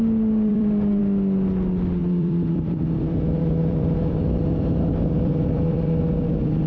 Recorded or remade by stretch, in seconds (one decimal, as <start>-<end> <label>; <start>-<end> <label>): 0.0-0.5 recorded; 0.5-1.0 remade; 1.0-2.0 recorded; 2.0-6.0 remade; 6.0-6.7 recorded